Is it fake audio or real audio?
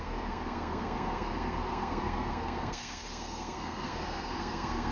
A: fake